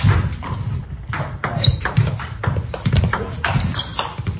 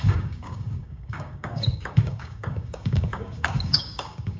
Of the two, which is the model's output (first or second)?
second